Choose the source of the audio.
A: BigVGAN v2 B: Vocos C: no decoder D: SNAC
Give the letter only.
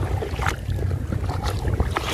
C